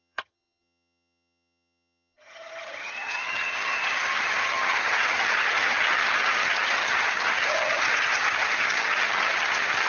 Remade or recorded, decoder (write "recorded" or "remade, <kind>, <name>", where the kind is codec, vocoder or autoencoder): remade, vocoder, HiFi-GAN